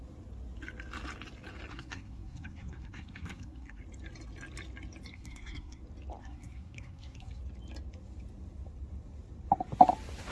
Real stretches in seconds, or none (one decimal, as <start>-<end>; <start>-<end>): 0.0-1.7; 3.8-5.1; 5.8-6.2; 7.4-10.3